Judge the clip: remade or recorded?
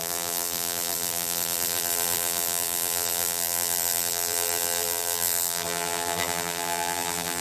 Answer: remade